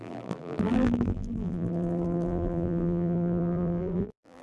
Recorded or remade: remade